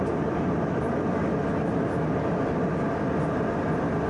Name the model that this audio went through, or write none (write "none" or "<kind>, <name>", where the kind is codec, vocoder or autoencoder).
none